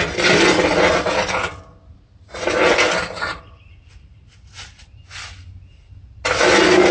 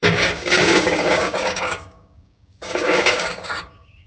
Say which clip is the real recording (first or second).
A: first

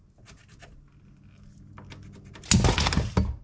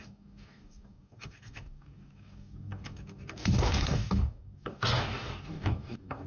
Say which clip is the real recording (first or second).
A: first